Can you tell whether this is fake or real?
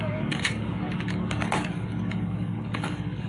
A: fake